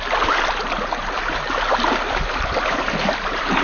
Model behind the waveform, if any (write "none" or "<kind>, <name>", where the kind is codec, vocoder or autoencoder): none